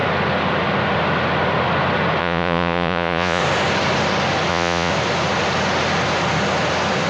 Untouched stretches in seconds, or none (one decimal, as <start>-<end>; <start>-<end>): 0.0-2.2; 3.4-4.5; 4.9-7.1